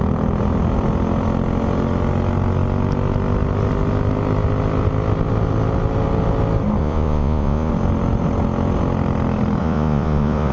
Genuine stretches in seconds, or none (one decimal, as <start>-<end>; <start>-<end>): 0.0-6.8; 7.7-9.6